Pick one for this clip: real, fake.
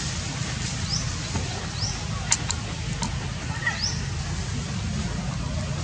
real